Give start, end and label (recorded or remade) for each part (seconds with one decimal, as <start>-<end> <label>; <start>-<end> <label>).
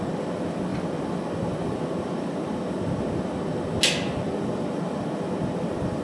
0.0-6.0 recorded